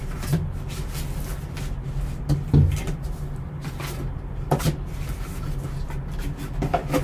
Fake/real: real